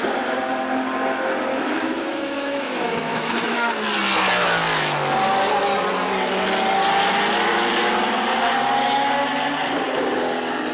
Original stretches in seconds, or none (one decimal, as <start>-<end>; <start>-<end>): 0.0-1.5; 3.7-10.7